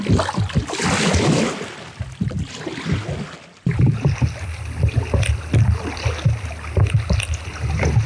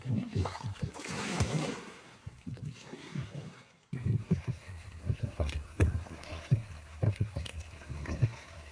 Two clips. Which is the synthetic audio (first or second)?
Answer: second